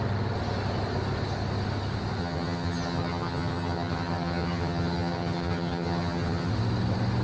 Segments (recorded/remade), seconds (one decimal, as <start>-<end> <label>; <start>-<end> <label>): 0.0-2.2 recorded; 2.2-6.5 remade; 6.5-7.2 recorded